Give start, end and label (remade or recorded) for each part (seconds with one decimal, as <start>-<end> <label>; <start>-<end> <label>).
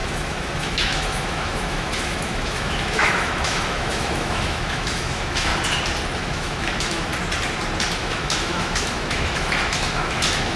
0.0-5.5 remade; 5.5-6.2 recorded; 6.2-7.1 remade; 7.1-8.0 recorded; 8.0-10.6 remade